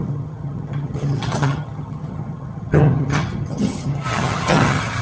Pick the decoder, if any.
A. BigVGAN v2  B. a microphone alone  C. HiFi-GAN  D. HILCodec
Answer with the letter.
C